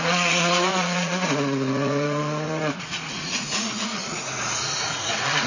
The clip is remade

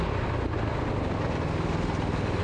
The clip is recorded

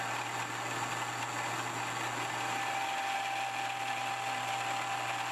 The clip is recorded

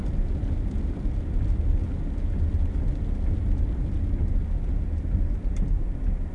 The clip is recorded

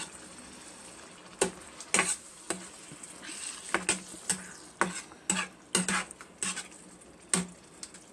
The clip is recorded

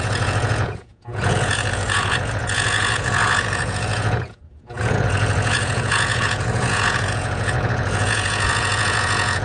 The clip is remade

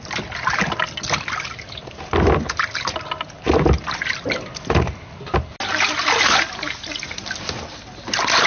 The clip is recorded